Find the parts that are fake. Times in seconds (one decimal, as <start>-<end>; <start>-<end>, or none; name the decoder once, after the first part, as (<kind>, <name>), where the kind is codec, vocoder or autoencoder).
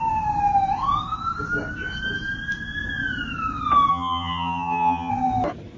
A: 3.9-5.1 (vocoder, HiFi-GAN)